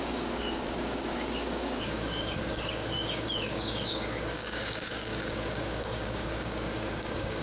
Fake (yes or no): yes